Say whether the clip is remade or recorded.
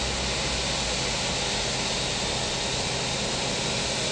recorded